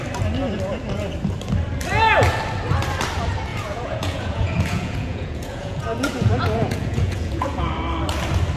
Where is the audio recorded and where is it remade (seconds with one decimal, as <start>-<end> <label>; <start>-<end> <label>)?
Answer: 0.0-3.5 recorded; 3.5-7.6 remade; 7.6-8.6 recorded